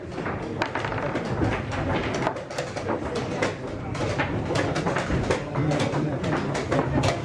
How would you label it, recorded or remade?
recorded